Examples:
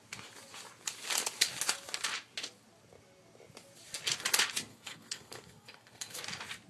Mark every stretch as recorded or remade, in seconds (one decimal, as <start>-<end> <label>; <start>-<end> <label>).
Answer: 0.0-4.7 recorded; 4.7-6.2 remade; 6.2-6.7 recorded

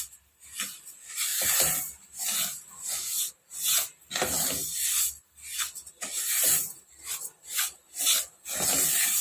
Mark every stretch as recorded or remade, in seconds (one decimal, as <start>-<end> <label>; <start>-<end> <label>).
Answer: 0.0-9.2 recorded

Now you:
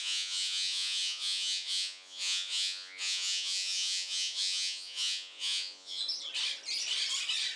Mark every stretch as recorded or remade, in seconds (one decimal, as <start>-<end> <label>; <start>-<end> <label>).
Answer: 0.0-6.0 remade; 6.0-7.6 recorded